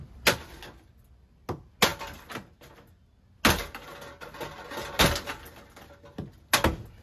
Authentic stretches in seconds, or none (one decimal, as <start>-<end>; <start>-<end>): 0.0-7.0